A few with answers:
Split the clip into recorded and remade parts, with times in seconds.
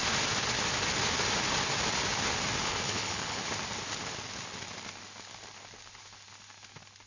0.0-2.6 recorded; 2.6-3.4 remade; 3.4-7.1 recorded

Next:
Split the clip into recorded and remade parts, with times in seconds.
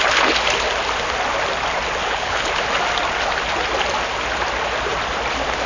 0.0-2.0 recorded; 2.0-2.5 remade; 2.5-5.7 recorded